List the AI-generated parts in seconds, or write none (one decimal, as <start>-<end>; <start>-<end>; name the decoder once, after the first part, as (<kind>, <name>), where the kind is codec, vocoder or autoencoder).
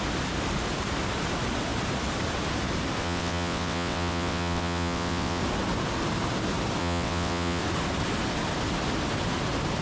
3.0-5.4 (vocoder, WaveNeXt); 6.8-7.6